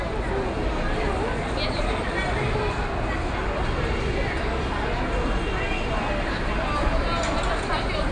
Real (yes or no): yes